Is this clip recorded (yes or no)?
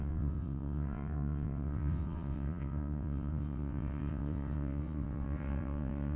no